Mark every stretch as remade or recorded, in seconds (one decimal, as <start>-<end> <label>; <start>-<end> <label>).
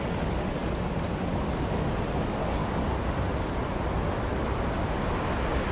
0.0-5.7 recorded